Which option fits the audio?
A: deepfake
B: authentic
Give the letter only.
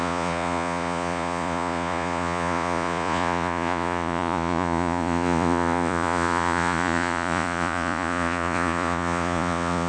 A